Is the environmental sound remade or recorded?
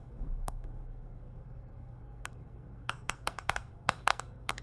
remade